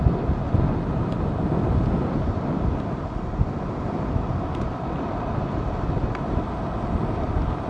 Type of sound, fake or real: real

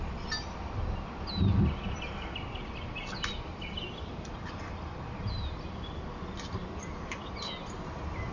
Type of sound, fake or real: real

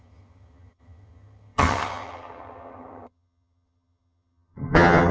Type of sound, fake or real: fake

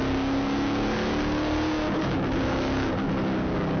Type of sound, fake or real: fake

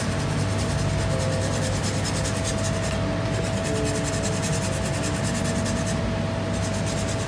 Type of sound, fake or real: real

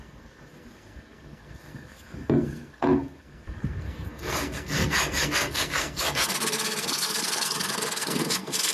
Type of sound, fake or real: fake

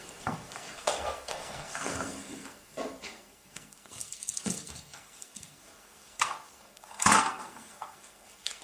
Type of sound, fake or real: fake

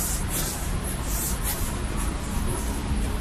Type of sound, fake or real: real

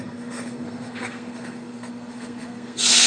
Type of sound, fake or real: fake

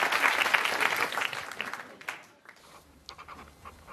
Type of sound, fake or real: real